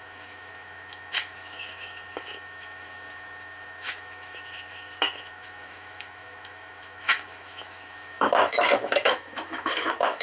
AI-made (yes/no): yes